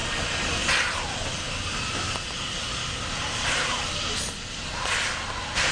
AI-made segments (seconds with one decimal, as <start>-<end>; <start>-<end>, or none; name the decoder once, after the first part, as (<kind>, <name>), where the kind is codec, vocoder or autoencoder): none